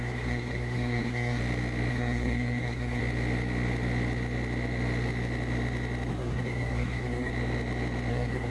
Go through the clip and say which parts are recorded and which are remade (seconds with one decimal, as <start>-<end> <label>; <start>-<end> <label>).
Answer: 0.0-1.4 remade; 1.4-1.9 recorded; 1.9-3.0 remade; 3.0-6.1 recorded; 6.1-7.3 remade; 7.3-8.1 recorded; 8.1-8.5 remade